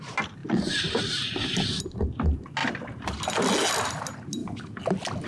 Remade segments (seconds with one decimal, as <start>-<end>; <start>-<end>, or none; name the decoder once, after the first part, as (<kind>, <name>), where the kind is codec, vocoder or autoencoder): none

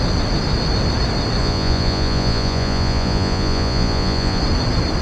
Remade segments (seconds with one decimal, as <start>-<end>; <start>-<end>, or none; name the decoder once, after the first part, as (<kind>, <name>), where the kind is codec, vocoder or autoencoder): 1.4-4.4 (vocoder, Vocos)

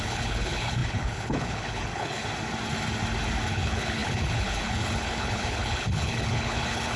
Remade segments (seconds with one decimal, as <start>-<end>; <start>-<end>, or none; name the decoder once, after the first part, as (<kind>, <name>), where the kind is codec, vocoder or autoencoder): 0.0-2.2 (codec, HILCodec); 3.5-7.0

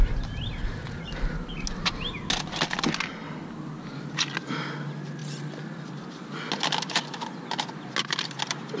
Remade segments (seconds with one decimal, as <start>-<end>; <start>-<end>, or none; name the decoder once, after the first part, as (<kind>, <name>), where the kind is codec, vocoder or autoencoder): none

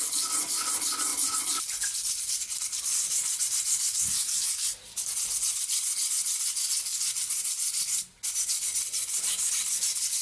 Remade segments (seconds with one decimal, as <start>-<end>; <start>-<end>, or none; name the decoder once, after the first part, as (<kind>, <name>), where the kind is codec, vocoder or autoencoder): none

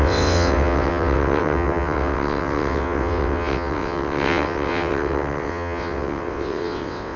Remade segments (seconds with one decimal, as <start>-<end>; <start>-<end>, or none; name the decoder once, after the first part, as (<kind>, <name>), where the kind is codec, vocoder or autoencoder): 0.0-7.2 (vocoder, WaveNeXt)

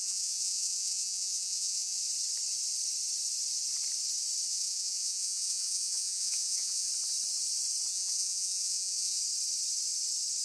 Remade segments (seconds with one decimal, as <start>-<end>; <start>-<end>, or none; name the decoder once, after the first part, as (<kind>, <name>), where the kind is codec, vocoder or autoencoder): 0.0-2.0 (vocoder, Vocos); 4.5-6.9; 7.9-9.2